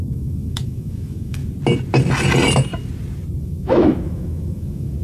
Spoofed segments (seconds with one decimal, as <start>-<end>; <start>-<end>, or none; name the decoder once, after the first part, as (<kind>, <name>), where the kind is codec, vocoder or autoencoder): 0.0-1.4 (autoencoder, DAC-VAE); 3.4-5.0